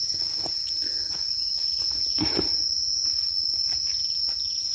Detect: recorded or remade recorded